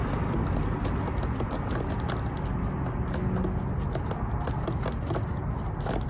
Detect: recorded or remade recorded